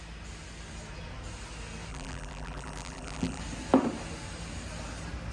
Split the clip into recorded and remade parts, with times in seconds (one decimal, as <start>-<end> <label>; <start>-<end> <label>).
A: 0.0-1.9 recorded; 1.9-3.4 remade; 3.4-5.3 recorded